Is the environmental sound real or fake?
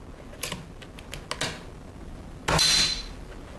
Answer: real